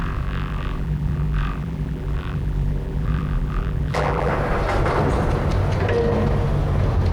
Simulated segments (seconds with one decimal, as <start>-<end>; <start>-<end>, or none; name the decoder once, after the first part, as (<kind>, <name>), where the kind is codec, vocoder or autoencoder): 0.0-4.3 (vocoder, BigVGAN v2)